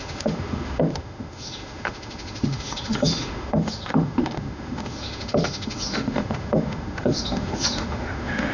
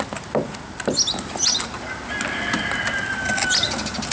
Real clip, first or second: second